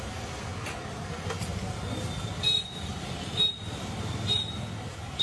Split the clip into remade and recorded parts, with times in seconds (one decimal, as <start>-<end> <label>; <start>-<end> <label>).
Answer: 0.0-5.2 recorded